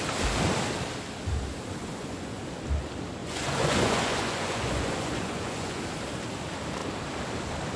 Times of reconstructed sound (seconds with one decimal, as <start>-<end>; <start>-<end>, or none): 1.8-2.4; 3.2-5.8

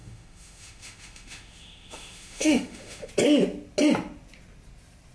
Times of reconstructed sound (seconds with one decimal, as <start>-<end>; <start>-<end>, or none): 0.0-3.1

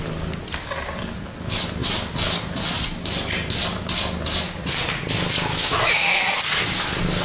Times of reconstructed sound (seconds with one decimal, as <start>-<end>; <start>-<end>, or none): 5.5-6.2

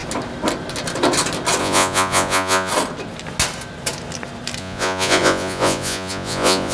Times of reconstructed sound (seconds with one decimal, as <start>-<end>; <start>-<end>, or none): 1.6-2.7; 4.6-6.7

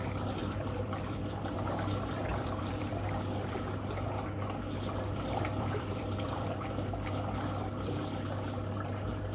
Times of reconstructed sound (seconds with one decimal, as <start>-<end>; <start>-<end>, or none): 0.4-1.2; 2.3-3.2; 5.5-6.9

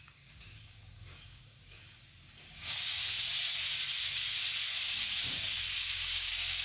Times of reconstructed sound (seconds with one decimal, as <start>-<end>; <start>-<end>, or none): 0.0-3.0; 4.0-4.4; 5.2-6.6

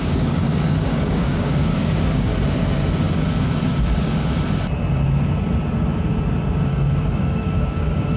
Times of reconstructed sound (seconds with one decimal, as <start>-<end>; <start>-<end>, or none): 0.0-2.3; 6.6-8.2